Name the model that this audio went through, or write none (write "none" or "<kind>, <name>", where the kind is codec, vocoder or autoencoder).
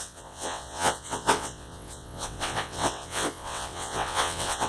vocoder, WaveNeXt